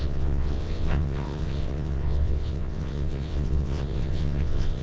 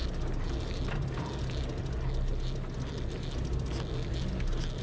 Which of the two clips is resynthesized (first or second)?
first